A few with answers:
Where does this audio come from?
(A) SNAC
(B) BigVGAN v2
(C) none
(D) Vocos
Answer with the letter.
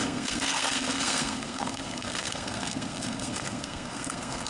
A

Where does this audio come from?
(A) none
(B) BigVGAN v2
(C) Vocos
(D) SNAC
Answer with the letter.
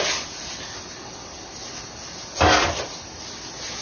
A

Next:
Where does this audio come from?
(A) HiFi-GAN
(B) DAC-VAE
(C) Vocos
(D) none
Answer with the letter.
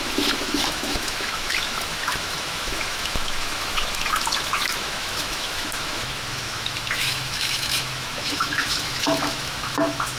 B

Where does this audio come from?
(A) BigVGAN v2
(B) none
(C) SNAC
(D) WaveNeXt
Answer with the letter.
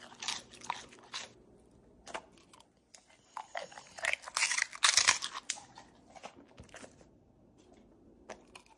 B